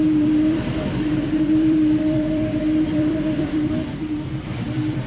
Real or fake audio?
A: fake